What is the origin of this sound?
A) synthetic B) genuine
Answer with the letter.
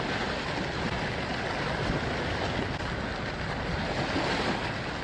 B